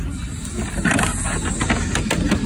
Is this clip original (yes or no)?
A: yes